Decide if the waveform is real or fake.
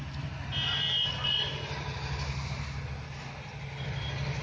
real